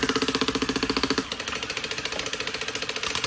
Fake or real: real